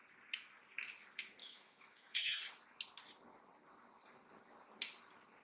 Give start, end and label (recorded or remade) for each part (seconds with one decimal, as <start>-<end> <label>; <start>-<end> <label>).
0.0-1.4 recorded; 1.4-2.4 remade; 2.4-5.4 recorded